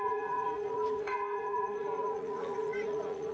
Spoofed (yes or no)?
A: yes